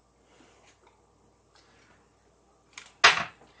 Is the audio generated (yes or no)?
no